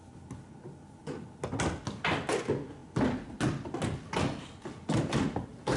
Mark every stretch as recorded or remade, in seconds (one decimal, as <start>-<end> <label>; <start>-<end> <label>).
0.0-5.8 recorded